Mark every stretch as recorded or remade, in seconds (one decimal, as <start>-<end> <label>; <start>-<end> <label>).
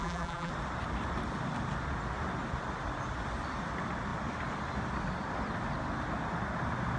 0.0-0.5 remade; 0.5-7.0 recorded